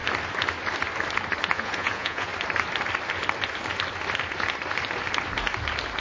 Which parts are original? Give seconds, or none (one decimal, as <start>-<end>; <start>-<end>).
0.0-1.5; 2.3-6.0